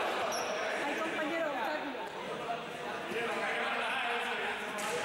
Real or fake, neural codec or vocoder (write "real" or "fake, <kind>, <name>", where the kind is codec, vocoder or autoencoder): real